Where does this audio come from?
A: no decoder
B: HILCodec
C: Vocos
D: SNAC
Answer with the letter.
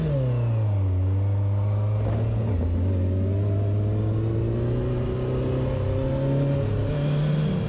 A